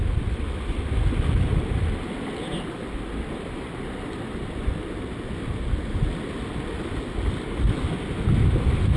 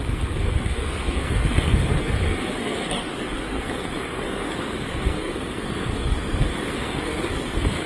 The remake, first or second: second